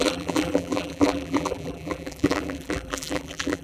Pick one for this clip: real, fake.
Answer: fake